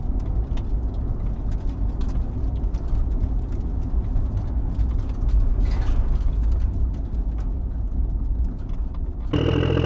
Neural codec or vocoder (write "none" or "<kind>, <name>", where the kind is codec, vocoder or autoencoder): none